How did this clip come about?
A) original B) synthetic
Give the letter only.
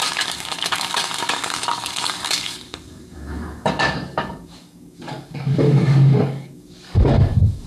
B